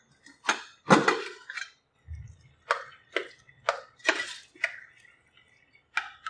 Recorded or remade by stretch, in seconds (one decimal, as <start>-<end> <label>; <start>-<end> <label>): 0.0-4.0 recorded; 4.0-4.9 remade; 4.9-6.3 recorded